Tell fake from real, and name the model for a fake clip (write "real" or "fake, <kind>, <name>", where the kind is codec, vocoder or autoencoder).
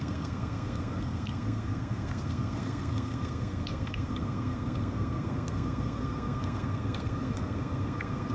fake, codec, SNAC